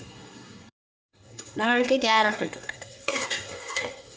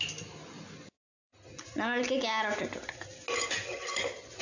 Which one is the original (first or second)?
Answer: second